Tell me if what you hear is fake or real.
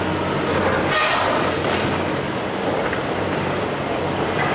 real